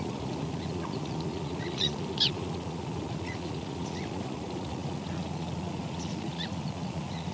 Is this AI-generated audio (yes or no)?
yes